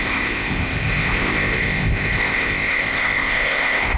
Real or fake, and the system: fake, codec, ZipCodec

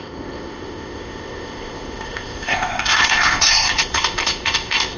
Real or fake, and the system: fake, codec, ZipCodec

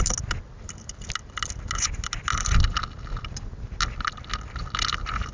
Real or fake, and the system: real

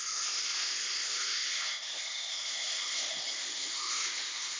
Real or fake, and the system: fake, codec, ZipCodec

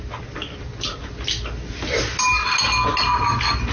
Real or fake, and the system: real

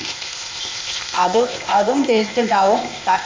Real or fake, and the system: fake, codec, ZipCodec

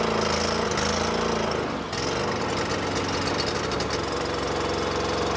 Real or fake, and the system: real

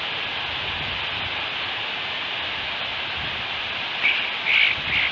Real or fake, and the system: real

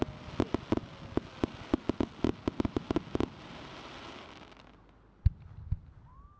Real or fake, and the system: real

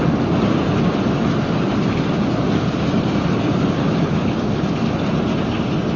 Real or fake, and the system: real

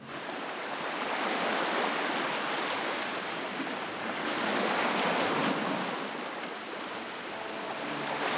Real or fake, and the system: real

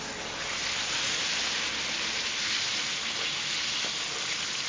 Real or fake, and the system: real